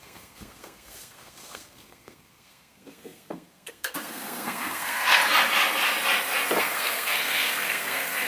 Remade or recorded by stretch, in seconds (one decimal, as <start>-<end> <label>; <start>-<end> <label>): 0.0-5.2 remade; 5.2-6.6 recorded; 6.6-8.3 remade